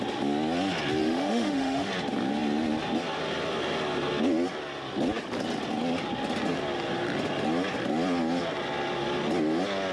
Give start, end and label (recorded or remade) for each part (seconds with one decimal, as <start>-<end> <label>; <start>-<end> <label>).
0.0-1.0 recorded; 1.0-1.9 remade; 1.9-9.9 recorded